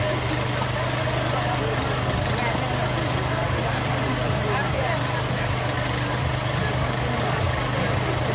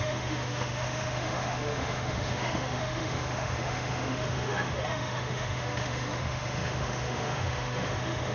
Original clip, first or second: first